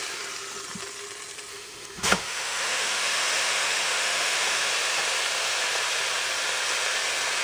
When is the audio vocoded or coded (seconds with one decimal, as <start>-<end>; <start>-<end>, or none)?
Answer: 1.5-4.7